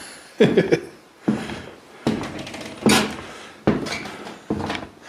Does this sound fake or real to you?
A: real